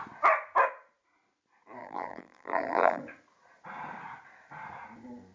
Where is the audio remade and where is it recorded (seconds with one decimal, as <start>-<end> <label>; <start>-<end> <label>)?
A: 0.0-1.8 recorded; 1.8-3.0 remade; 3.0-5.3 recorded